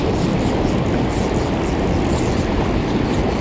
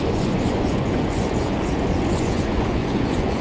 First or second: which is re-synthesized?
second